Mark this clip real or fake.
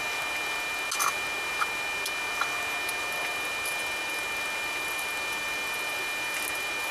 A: real